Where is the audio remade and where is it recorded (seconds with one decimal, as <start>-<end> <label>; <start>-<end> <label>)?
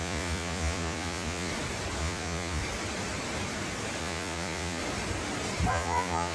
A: 0.0-1.5 remade; 1.5-2.0 recorded; 2.0-2.6 remade; 2.6-4.0 recorded; 4.0-4.8 remade; 4.8-5.7 recorded; 5.7-6.3 remade